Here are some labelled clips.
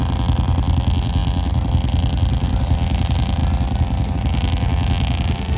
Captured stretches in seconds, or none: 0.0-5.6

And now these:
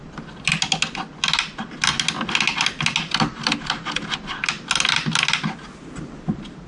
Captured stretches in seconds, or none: 0.0-6.7

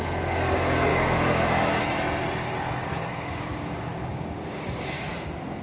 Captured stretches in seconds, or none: 0.0-0.9; 1.8-2.8; 5.1-5.6